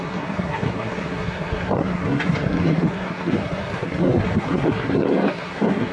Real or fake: fake